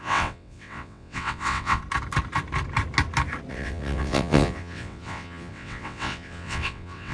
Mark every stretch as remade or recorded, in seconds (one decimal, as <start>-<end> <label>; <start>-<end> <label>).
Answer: 0.0-1.8 remade; 1.8-3.5 recorded; 3.5-7.1 remade